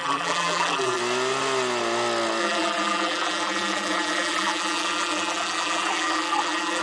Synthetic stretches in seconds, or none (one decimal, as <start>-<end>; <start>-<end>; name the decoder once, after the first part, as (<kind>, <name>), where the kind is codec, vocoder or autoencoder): 0.0-1.0 (vocoder, BigVGAN v2); 2.4-6.8